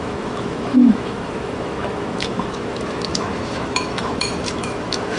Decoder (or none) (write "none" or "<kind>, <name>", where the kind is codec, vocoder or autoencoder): autoencoder, DAC-VAE